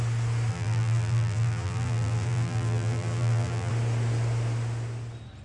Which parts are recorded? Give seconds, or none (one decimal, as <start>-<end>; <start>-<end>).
0.0-0.5; 3.7-5.4